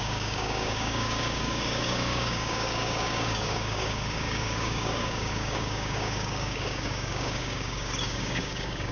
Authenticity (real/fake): fake